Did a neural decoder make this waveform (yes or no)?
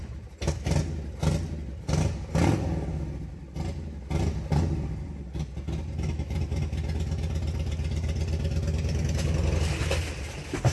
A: no